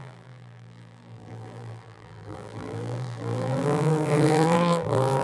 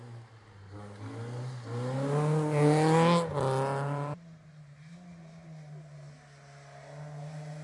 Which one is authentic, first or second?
second